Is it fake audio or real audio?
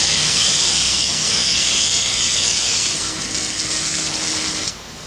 fake